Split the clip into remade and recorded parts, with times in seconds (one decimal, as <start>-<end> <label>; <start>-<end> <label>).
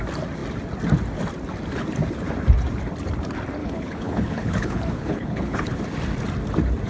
0.0-3.6 recorded; 3.6-5.8 remade; 5.8-6.9 recorded